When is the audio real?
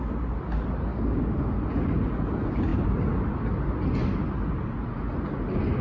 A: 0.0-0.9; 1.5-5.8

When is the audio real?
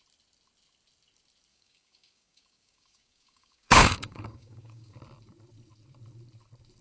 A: 0.0-1.5; 5.0-6.8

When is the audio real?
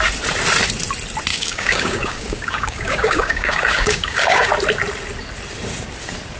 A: 0.0-1.3; 4.5-6.4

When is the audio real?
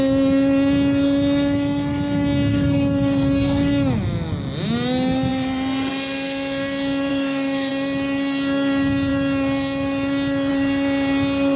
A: 0.0-2.5; 3.7-7.1; 7.7-11.6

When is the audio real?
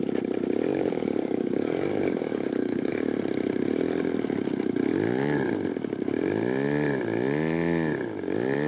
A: 0.0-0.7; 2.9-8.7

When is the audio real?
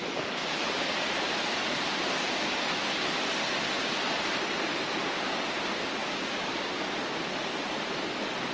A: 0.0-6.0; 6.8-8.5